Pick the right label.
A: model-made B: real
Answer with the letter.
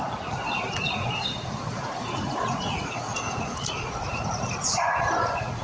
A